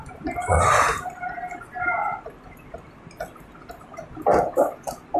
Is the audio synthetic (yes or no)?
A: no